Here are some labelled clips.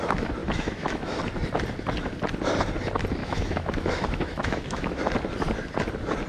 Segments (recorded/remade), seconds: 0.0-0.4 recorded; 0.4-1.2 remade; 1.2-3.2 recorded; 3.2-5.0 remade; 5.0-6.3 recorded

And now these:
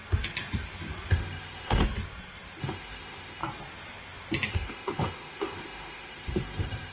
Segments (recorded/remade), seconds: 0.0-1.1 recorded; 1.1-1.8 remade; 1.8-2.6 recorded; 2.6-3.4 remade; 3.4-4.5 recorded; 4.5-6.9 remade